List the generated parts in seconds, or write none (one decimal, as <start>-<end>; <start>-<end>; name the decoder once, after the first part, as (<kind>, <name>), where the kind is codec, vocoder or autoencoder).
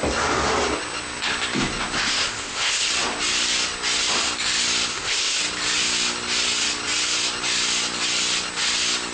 2.0-2.9 (codec, ZipCodec); 4.9-5.4